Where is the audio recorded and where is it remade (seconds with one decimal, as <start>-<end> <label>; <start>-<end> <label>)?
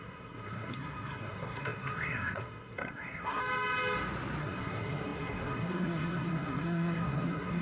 0.0-3.4 remade; 3.4-4.4 recorded; 4.4-7.6 remade